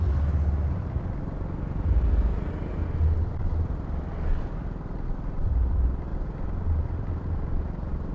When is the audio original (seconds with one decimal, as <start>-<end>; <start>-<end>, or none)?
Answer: 0.0-8.1

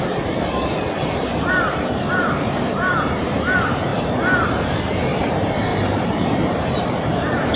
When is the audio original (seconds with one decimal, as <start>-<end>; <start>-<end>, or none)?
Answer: none

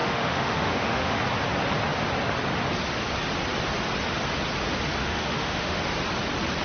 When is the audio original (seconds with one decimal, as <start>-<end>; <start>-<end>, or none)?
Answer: 1.2-5.0; 5.8-6.6

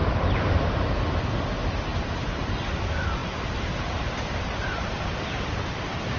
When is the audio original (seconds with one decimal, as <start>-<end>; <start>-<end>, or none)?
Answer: 0.5-1.9; 2.8-3.2; 5.0-6.2

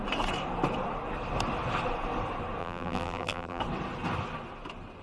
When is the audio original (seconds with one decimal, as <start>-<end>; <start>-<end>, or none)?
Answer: 0.0-2.6; 3.6-5.0